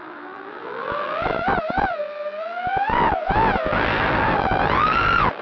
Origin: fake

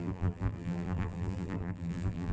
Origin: fake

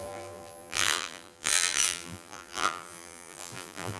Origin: fake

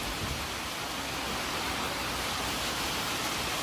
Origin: real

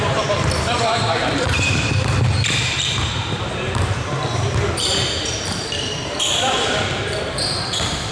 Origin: fake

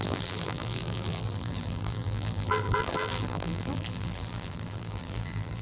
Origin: fake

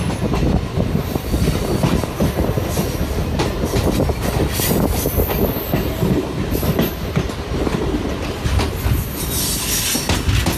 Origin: real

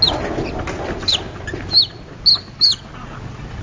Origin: real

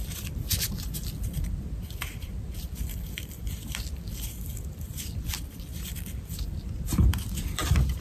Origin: fake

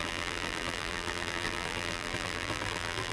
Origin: fake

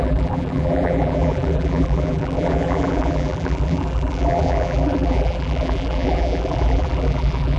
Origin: fake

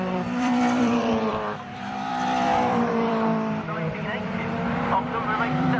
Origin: fake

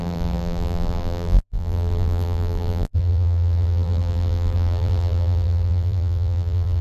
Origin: fake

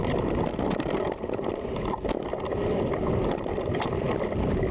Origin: fake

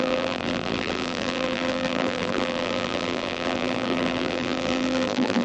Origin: fake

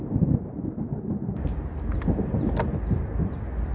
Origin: real